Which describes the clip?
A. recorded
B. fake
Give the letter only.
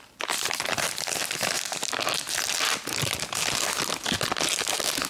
A